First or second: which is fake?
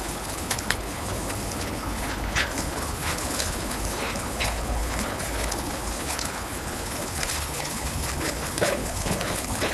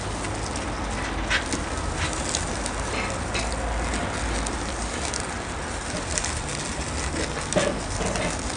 first